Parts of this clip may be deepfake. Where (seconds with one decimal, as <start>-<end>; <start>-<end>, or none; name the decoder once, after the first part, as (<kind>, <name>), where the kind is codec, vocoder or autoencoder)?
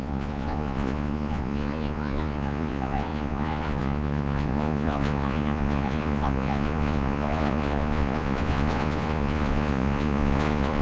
0.0-10.8 (vocoder, Vocos)